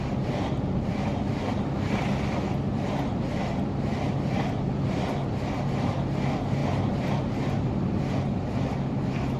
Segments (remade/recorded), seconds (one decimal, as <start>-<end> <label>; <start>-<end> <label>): 0.0-9.4 recorded